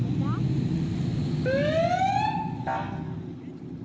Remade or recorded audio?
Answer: recorded